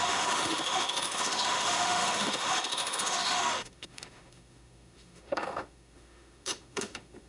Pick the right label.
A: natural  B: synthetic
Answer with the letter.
B